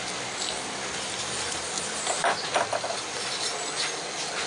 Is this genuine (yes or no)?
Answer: yes